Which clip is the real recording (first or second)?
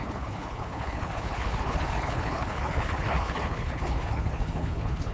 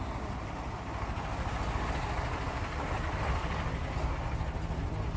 second